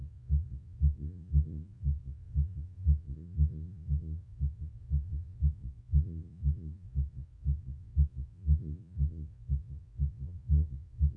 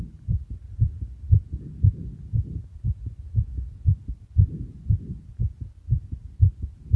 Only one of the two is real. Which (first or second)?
second